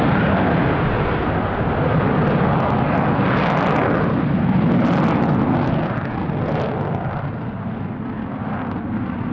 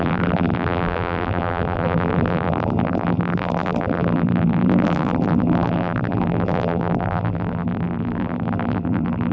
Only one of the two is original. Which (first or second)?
first